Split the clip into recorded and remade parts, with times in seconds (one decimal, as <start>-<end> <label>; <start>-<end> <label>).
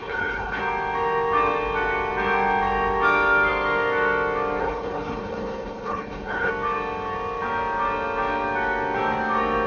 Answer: 0.0-0.6 remade; 0.6-4.6 recorded; 4.6-6.5 remade; 6.5-9.7 recorded